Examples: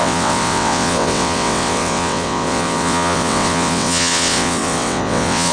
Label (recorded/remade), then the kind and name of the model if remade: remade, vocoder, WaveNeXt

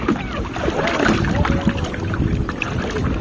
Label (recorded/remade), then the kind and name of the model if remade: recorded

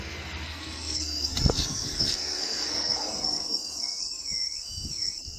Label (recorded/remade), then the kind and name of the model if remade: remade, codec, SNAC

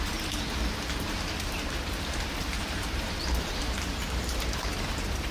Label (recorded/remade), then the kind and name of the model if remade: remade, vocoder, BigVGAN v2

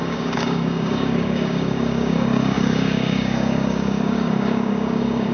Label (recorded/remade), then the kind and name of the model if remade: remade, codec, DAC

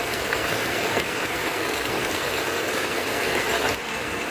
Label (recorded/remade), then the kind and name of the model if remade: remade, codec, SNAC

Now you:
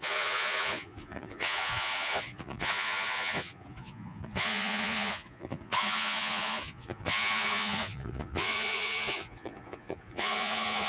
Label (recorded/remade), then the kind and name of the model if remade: remade, vocoder, Vocos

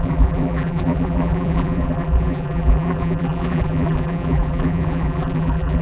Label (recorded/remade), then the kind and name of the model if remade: remade, vocoder, BigVGAN v2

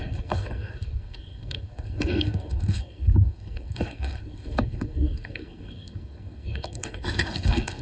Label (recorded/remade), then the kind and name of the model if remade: remade, codec, SNAC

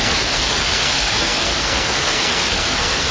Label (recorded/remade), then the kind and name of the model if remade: remade, codec, SNAC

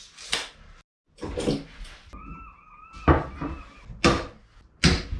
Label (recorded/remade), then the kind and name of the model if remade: recorded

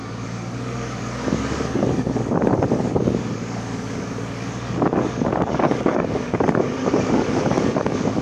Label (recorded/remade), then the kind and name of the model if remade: remade, codec, DAC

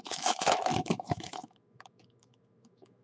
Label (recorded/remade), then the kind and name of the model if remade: remade, autoencoder, DAC-VAE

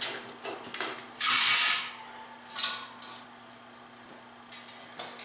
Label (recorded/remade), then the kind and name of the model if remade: recorded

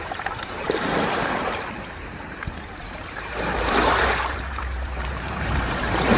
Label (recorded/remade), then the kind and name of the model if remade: remade, vocoder, BigVGAN v2